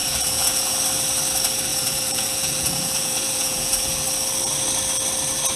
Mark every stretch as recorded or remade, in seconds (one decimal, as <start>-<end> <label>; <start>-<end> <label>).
0.0-0.7 remade; 0.7-1.7 recorded; 1.7-4.0 remade; 4.0-5.6 recorded